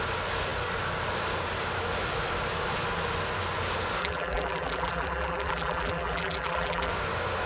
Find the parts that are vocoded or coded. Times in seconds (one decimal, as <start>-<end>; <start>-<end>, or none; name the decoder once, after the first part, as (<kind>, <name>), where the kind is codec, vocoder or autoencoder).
4.0-6.9 (vocoder, BigVGAN v2)